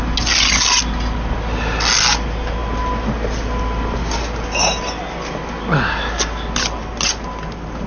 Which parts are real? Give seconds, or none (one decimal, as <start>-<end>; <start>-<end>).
0.0-7.9